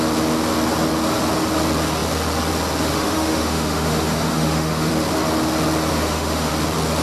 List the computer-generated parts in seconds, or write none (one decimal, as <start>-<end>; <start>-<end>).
2.9-4.9; 5.9-6.5